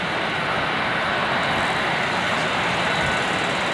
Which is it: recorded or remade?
recorded